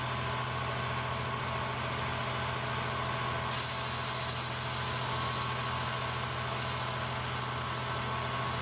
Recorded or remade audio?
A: recorded